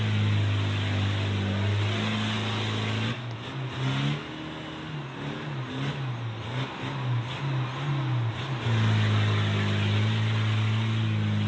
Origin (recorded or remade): recorded